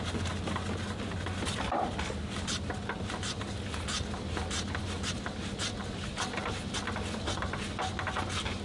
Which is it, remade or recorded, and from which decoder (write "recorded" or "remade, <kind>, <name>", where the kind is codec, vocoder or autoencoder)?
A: recorded